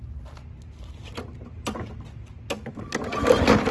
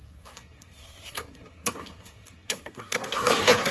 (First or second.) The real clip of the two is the first